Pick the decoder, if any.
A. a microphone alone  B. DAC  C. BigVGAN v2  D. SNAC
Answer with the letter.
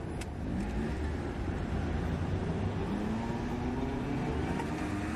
A